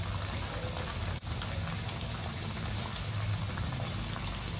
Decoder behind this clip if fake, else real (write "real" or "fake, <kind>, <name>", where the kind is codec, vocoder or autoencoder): real